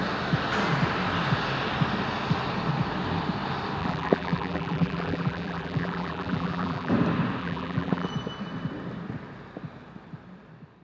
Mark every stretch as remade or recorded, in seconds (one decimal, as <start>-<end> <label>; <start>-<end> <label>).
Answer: 0.0-3.8 recorded; 3.8-6.9 remade; 6.9-7.4 recorded; 7.4-8.1 remade; 8.1-10.8 recorded